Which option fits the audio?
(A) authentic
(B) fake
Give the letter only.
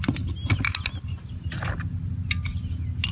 A